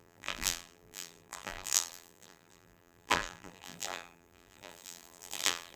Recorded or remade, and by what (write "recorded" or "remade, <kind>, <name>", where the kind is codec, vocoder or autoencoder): remade, vocoder, BigVGAN v2